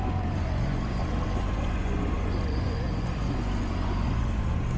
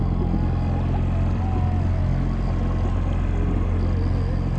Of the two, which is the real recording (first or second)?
second